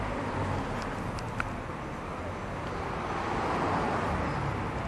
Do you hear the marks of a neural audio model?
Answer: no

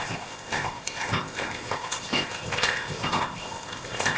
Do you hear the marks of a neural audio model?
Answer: yes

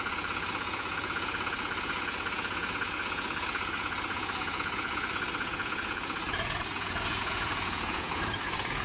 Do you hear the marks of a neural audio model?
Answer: yes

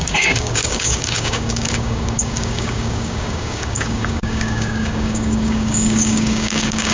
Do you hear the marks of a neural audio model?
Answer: yes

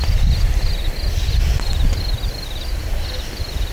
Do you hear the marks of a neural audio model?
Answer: no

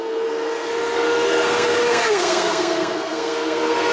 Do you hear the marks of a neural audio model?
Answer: yes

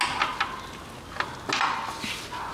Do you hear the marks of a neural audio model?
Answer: no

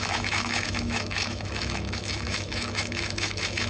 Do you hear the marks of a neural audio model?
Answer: yes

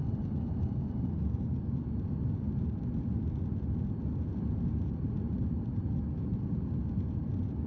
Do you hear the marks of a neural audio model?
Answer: no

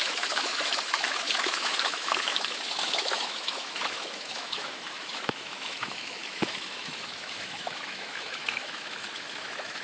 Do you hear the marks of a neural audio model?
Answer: yes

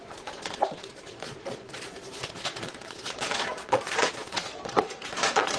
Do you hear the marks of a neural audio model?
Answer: yes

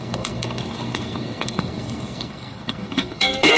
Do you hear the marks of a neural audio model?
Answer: yes